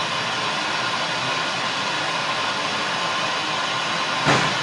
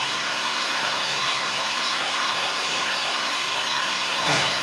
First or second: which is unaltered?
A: first